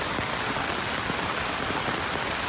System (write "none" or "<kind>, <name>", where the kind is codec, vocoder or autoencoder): none